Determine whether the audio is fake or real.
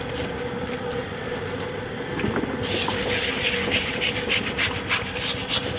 real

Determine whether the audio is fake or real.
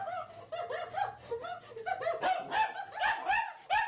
real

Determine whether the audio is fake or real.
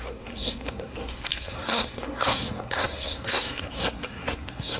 fake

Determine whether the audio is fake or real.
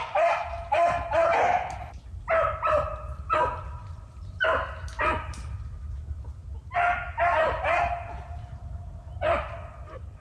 real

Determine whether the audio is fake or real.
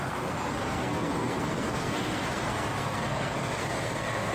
fake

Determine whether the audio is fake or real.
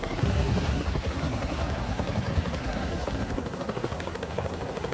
fake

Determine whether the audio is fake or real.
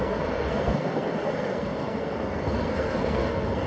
fake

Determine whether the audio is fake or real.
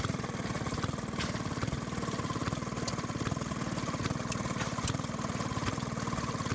real